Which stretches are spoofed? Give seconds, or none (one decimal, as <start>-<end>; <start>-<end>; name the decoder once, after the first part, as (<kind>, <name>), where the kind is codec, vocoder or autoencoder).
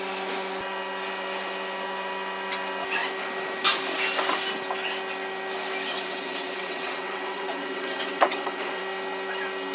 5.9-8.8 (vocoder, WaveNeXt)